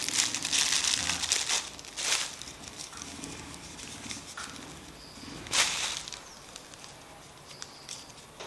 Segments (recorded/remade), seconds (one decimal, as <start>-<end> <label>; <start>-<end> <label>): 0.0-2.8 recorded; 2.8-4.3 remade; 4.3-8.5 recorded